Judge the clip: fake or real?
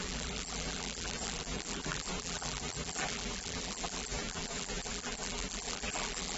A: fake